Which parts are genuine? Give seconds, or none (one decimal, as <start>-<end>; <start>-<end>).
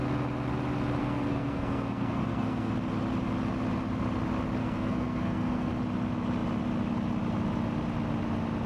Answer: 0.0-1.0; 2.7-4.6; 5.7-8.7